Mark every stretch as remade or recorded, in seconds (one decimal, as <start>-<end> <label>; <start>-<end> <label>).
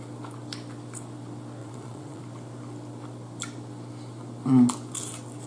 0.0-1.6 recorded; 1.6-2.2 remade; 2.2-5.5 recorded